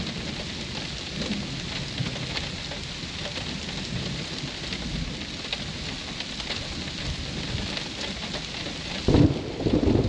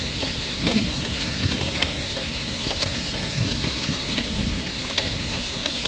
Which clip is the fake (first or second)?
second